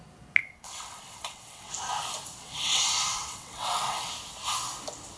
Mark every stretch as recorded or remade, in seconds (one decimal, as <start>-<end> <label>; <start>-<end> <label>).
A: 0.0-0.4 recorded; 0.4-1.7 remade; 1.7-2.4 recorded; 2.4-4.1 remade; 4.1-5.2 recorded